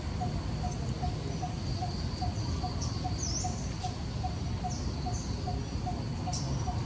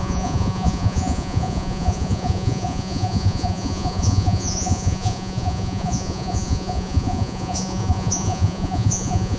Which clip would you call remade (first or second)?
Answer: second